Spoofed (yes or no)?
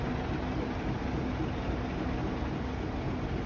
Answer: no